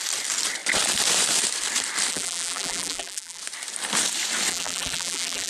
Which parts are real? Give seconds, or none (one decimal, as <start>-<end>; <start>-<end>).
0.0-2.1; 3.4-4.5